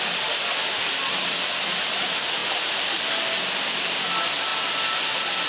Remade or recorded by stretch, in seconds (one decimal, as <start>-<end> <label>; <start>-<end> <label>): 0.0-5.5 recorded